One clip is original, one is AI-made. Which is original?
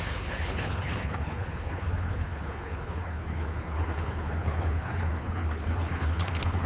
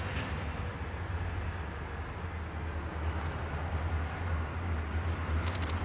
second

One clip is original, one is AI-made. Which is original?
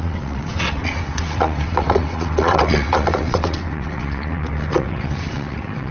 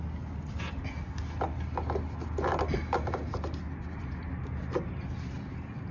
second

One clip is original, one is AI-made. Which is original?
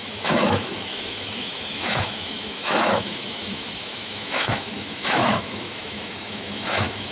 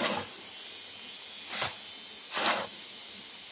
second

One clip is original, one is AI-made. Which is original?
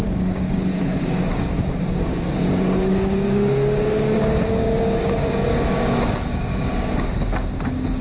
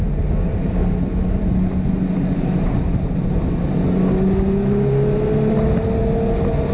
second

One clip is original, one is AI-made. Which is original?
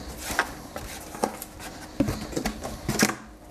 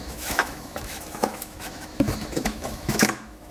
first